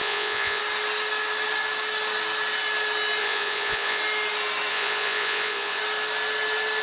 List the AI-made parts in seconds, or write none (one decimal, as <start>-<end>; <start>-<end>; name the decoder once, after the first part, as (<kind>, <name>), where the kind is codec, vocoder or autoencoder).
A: 0.0-0.6 (vocoder, Vocos); 3.2-4.0; 4.7-5.8